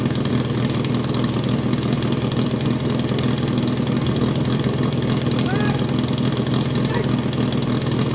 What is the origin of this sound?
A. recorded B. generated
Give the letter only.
A